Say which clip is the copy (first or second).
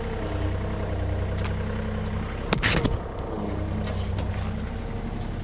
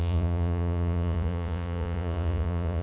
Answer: second